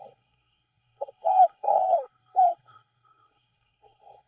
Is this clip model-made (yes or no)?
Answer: yes